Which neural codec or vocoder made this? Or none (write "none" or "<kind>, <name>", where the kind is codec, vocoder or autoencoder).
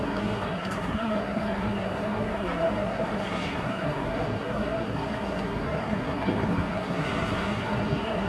codec, SNAC